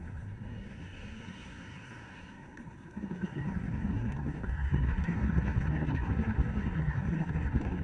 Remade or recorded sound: remade